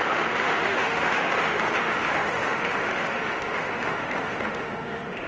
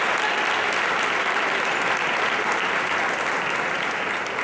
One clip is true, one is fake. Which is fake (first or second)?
first